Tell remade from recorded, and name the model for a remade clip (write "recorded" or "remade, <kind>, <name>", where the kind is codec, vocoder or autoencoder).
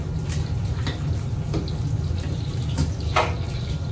recorded